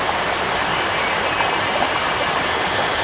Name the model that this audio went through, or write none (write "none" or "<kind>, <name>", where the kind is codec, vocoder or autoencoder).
none